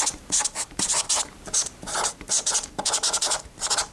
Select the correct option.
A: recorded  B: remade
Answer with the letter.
B